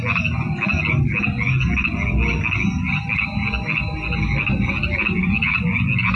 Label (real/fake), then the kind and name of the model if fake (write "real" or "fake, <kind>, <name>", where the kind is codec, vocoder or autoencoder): real